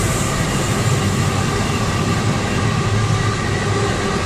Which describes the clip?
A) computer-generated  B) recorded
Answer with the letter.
B